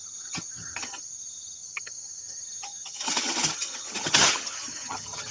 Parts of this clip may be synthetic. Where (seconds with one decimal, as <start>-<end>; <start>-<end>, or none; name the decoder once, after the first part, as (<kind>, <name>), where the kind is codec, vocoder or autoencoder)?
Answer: 0.0-5.3 (vocoder, HiFi-GAN)